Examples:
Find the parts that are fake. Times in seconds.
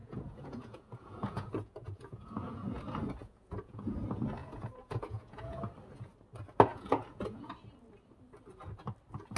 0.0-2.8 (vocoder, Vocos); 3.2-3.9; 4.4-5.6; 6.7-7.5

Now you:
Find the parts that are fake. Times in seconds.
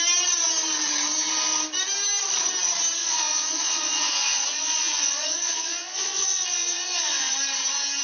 3.0-7.3 (vocoder, Vocos)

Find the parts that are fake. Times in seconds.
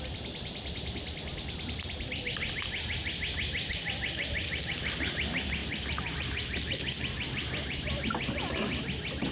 none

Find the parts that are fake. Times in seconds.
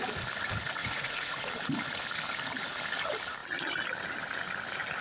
0.8-1.5 (vocoder, Vocos)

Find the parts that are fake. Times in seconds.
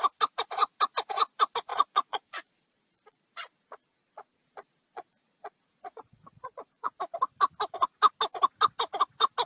1.7-7.0 (vocoder, Vocos)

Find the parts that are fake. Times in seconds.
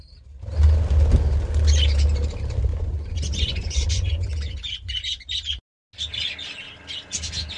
2.7-5.6 (vocoder, Vocos)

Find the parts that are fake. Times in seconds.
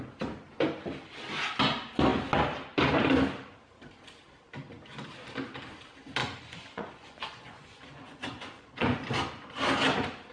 6.2-9.1 (vocoder, Vocos)